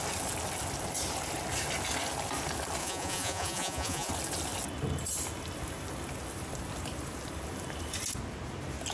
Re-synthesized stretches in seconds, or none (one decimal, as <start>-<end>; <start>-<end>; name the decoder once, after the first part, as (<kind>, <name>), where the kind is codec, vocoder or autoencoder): 2.8-4.1 (vocoder, Vocos)